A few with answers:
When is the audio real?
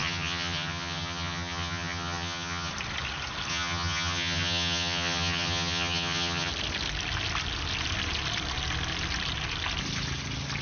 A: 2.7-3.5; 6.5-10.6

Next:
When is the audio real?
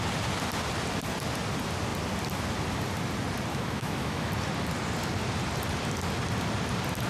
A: 0.0-3.5; 4.3-7.1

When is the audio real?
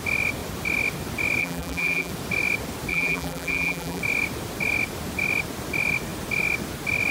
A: 0.0-1.4; 2.1-2.9; 4.0-7.1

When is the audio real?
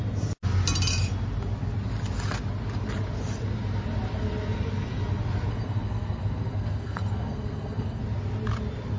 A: 0.0-5.5; 8.0-9.0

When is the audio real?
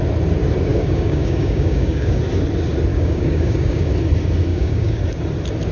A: 0.0-0.7; 2.2-2.9; 3.9-4.5; 5.0-5.7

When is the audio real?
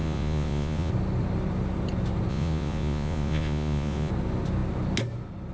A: 0.9-2.3; 4.1-5.5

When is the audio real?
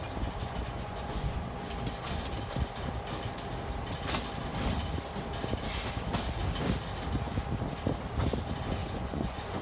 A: 0.0-0.4; 1.7-8.8